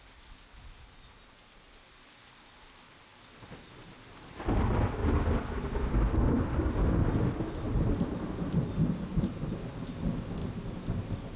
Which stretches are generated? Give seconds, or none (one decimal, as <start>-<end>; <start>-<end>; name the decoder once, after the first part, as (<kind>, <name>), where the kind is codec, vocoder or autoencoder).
none